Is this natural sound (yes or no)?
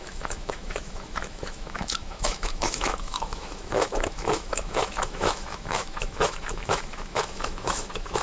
no